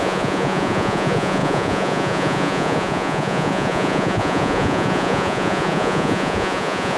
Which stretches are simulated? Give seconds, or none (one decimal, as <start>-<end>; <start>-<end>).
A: 0.0-7.0